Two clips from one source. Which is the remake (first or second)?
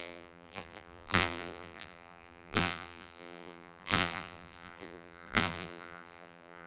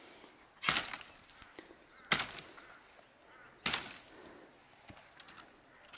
first